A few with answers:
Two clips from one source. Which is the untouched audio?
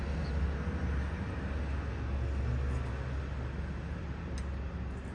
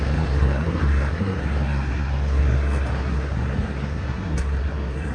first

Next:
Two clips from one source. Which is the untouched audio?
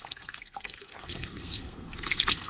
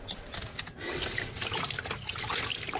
second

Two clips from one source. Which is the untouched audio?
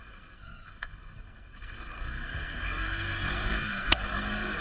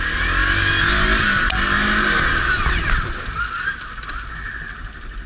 second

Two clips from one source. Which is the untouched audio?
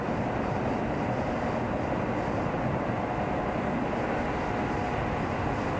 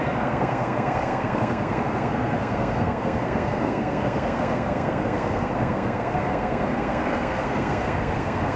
first